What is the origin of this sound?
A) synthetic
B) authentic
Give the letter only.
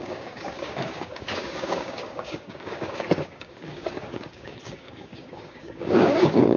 A